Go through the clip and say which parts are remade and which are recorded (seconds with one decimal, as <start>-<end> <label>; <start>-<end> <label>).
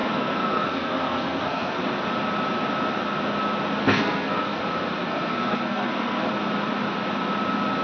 0.0-1.8 remade; 1.8-3.8 recorded; 3.8-4.6 remade; 4.6-5.0 recorded; 5.0-6.3 remade; 6.3-7.8 recorded